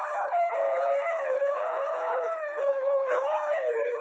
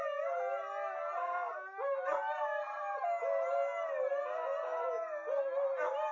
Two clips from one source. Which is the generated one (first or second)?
first